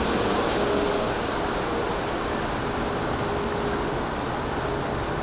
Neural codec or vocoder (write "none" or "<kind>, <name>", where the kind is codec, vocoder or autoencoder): none